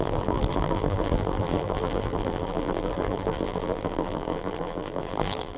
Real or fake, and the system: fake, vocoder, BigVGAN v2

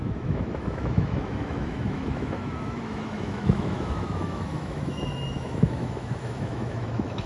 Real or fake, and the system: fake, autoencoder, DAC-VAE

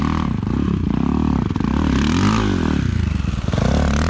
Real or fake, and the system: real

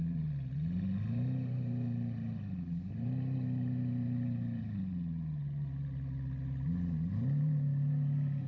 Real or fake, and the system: real